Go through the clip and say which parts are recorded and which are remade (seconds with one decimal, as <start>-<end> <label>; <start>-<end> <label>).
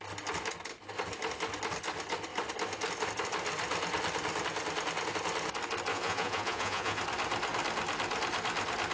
0.0-5.9 recorded; 5.9-7.0 remade; 7.0-8.9 recorded